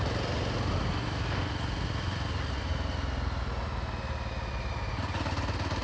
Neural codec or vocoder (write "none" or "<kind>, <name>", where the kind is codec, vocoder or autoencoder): none